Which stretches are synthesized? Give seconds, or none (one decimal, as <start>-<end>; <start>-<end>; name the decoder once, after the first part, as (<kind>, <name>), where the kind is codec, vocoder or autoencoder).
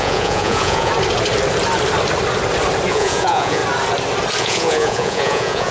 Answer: 0.0-0.9 (vocoder, Vocos); 2.9-3.6; 4.4-5.7